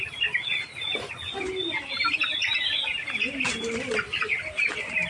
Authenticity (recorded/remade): recorded